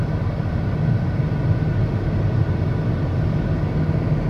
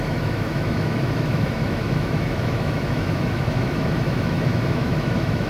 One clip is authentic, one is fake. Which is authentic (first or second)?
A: first